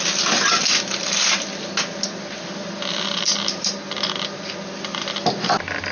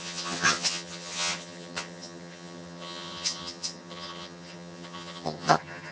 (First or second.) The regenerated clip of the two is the second